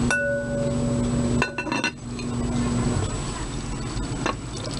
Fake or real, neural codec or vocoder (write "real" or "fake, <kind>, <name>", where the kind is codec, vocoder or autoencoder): real